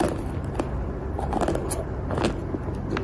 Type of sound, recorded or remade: recorded